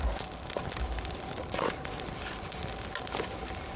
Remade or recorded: recorded